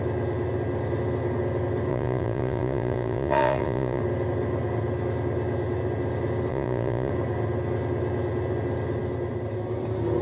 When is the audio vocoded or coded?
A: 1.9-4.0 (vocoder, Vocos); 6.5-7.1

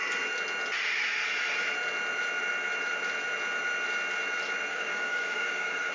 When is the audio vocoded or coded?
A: 4.7-5.9 (codec, DAC)

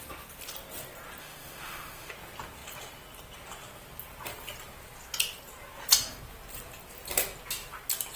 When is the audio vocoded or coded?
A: 1.2-2.1 (autoencoder, DAC-VAE)

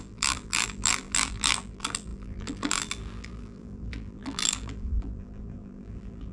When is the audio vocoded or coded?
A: 0.0-6.3 (vocoder, BigVGAN v2)

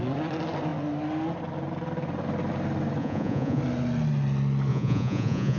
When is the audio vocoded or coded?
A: 3.0-3.6 (vocoder, Vocos); 4.7-5.6

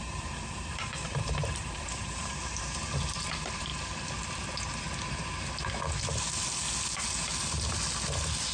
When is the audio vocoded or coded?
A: 0.0-3.7 (vocoder, BigVGAN v2)